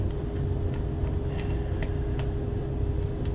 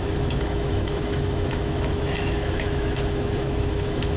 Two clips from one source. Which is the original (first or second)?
first